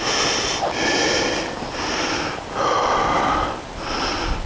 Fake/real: real